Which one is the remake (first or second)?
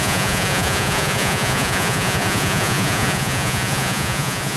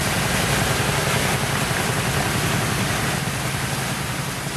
first